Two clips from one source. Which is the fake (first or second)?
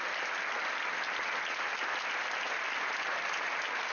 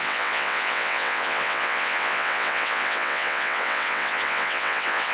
second